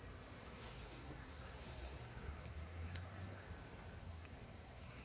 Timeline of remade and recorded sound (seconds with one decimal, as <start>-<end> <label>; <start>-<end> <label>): 0.0-0.5 recorded; 0.5-3.5 remade; 3.5-4.0 recorded; 4.0-5.0 remade